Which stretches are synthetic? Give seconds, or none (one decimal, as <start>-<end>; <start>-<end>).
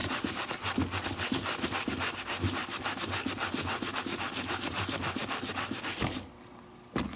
none